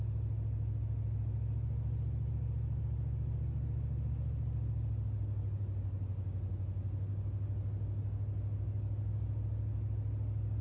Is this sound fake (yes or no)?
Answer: no